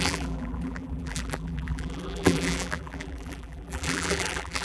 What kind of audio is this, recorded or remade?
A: remade